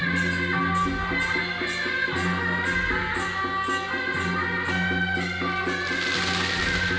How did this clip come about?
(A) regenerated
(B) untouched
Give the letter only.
B